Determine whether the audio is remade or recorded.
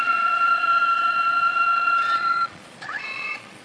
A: remade